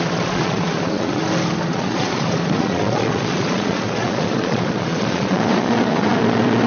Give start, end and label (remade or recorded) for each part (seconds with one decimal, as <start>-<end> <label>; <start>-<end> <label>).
0.0-1.2 remade; 1.2-1.7 recorded; 1.7-6.7 remade